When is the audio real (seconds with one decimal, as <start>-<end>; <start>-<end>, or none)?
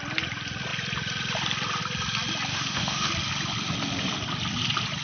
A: 0.0-2.5; 3.1-5.0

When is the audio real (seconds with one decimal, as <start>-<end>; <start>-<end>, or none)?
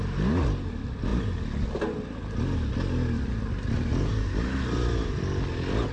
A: 0.0-5.9